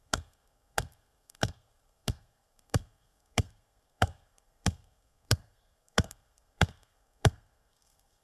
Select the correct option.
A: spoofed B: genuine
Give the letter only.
A